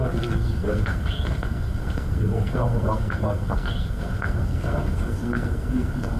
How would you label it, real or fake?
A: fake